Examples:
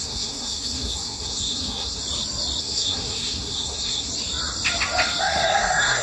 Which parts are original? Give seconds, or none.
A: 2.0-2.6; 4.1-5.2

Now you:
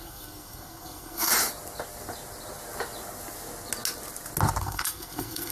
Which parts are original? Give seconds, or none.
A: 1.3-4.6

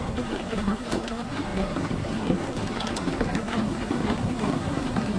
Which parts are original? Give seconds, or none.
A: none

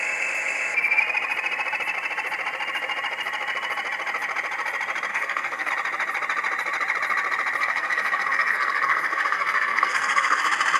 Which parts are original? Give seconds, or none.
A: 0.0-5.1; 5.7-7.6; 10.4-10.8